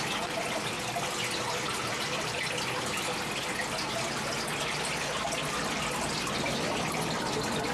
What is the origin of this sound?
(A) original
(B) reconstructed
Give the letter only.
A